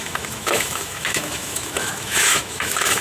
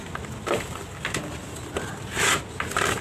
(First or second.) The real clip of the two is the second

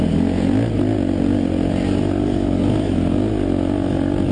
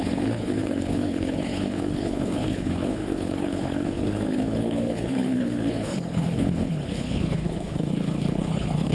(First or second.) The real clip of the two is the first